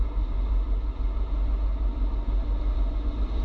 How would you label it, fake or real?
real